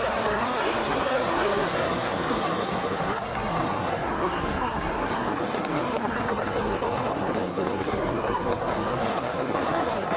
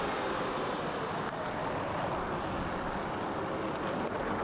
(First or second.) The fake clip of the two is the first